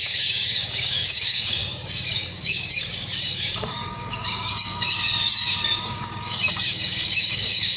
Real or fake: fake